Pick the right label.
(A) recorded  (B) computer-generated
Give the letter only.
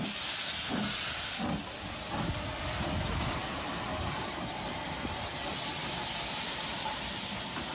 A